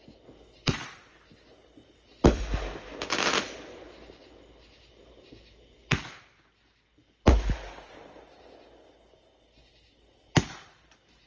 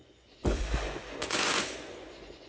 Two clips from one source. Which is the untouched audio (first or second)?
first